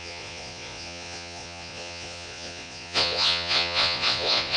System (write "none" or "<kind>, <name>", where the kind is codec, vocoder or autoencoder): vocoder, Vocos